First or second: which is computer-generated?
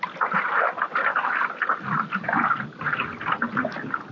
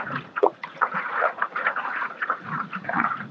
second